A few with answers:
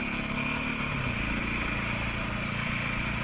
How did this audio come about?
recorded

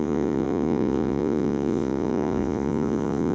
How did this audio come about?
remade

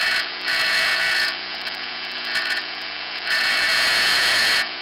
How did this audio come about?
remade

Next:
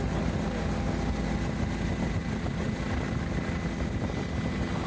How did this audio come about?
recorded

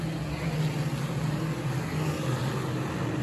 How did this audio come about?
recorded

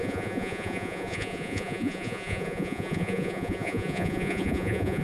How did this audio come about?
remade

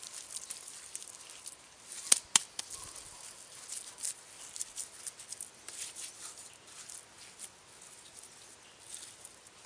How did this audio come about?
recorded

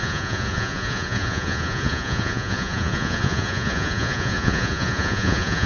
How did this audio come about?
remade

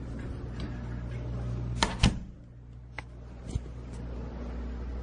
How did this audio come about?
recorded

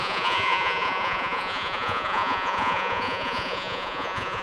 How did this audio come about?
remade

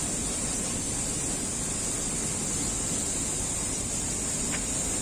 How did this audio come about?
recorded